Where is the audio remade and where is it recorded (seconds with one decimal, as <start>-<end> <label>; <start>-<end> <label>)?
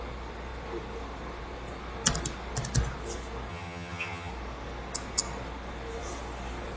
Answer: 0.0-3.5 recorded; 3.5-4.3 remade; 4.3-6.8 recorded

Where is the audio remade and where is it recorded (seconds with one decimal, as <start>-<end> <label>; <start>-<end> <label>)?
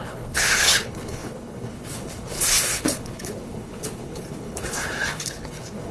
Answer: 0.0-5.9 remade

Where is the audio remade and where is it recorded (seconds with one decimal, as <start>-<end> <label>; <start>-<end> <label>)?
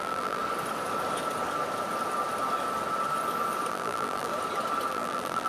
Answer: 0.0-0.4 remade; 0.4-3.7 recorded; 3.7-4.3 remade; 4.3-4.9 recorded; 4.9-5.5 remade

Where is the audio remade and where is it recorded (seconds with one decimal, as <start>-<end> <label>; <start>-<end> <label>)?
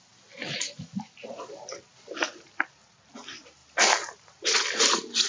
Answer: 0.0-5.3 recorded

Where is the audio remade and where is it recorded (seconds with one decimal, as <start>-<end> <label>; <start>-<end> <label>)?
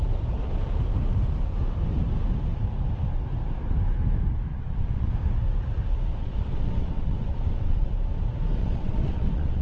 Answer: 0.0-4.5 recorded; 4.5-5.1 remade; 5.1-6.2 recorded; 6.2-7.9 remade; 7.9-8.6 recorded; 8.6-9.6 remade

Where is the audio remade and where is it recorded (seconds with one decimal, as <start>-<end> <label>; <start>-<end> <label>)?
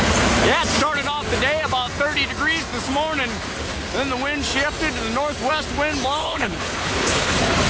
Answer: 0.0-6.2 recorded; 6.2-7.3 remade; 7.3-7.7 recorded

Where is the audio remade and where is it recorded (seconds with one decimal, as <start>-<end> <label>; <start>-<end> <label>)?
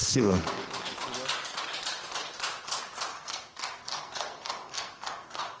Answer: 0.0-0.6 remade; 0.6-3.1 recorded; 3.1-5.6 remade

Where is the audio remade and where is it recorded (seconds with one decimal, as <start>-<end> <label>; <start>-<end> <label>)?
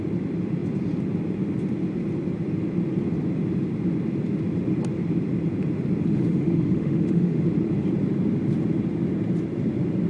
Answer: 0.0-6.1 recorded; 6.1-7.4 remade; 7.4-10.1 recorded